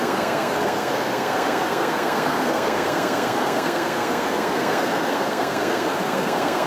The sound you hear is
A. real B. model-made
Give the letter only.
B